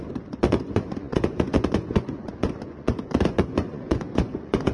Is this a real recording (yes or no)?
no